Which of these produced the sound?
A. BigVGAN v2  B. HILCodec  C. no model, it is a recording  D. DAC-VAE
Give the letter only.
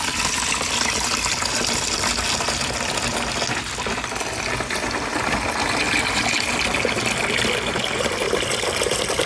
C